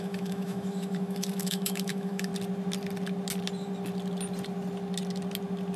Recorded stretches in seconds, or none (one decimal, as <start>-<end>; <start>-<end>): 2.3-5.8